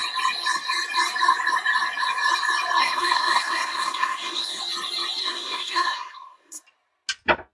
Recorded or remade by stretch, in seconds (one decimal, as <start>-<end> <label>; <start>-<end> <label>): 0.0-2.8 recorded; 2.8-4.6 remade; 4.6-5.2 recorded; 5.2-6.6 remade; 6.6-7.5 recorded